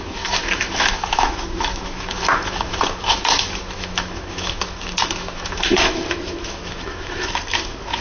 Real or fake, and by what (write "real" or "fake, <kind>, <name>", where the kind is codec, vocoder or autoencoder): fake, autoencoder, DAC-VAE